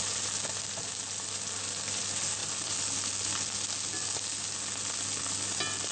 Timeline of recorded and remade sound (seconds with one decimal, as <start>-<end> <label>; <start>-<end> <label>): 0.0-5.9 recorded